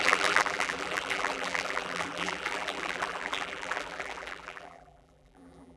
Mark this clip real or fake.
fake